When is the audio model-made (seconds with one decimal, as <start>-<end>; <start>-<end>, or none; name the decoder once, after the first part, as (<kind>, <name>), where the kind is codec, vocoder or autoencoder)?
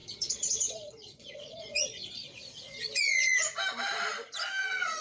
0.0-3.4 (vocoder, Vocos); 4.6-5.0